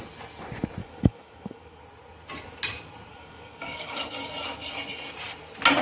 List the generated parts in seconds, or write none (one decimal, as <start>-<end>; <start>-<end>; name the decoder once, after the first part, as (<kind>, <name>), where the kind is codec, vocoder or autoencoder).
0.8-1.8 (codec, DAC); 3.1-4.0